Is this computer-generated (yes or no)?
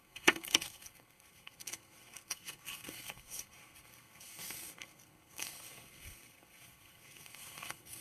yes